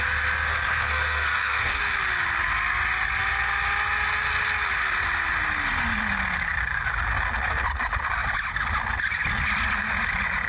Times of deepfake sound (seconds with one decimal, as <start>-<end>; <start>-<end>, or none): 0.5-1.8